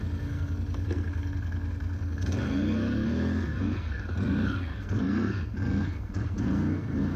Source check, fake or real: fake